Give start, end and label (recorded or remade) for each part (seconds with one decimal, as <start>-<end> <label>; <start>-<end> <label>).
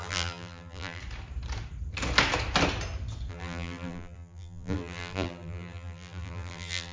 0.0-1.0 remade; 1.0-3.3 recorded; 3.3-6.9 remade